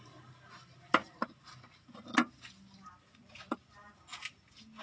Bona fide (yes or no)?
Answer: yes